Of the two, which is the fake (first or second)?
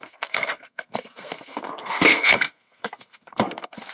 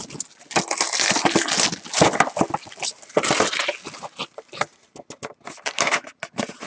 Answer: first